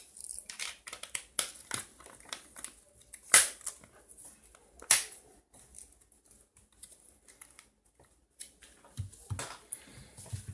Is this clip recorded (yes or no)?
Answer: yes